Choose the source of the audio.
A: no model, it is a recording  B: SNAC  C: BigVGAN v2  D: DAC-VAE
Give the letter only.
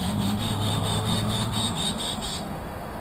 D